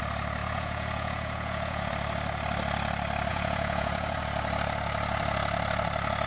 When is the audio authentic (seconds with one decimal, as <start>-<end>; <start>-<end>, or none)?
0.0-0.4; 1.9-3.3; 4.2-6.3